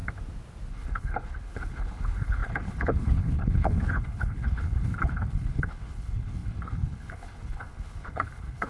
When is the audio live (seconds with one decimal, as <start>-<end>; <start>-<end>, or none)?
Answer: 0.0-0.7

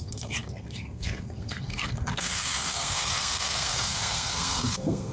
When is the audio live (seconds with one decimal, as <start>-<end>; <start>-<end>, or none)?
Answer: none

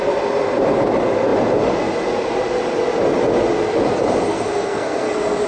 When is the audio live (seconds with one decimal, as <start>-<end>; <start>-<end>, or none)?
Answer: 0.0-4.3; 5.1-5.5

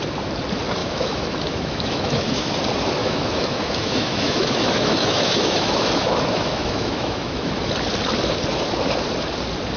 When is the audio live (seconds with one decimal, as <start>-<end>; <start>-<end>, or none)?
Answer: 0.0-0.8; 2.5-3.0; 7.7-9.8

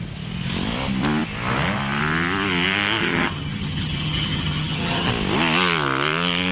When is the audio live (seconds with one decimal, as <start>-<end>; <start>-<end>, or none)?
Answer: 0.0-3.0; 5.1-6.5